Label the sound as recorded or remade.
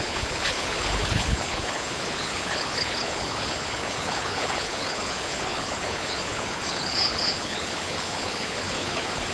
remade